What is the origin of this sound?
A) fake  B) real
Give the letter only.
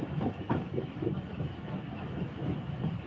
A